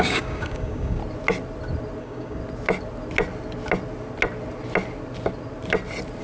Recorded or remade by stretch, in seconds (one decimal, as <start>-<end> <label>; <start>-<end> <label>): 0.0-1.0 remade; 1.0-2.0 recorded; 2.0-2.4 remade; 2.4-6.2 recorded